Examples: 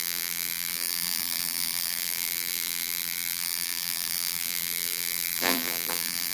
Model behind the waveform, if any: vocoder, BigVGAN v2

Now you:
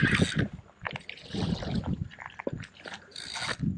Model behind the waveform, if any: none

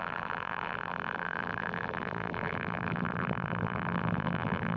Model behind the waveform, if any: vocoder, BigVGAN v2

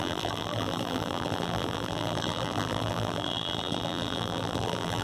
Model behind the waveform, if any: vocoder, BigVGAN v2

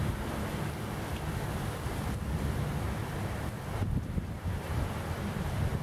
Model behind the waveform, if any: none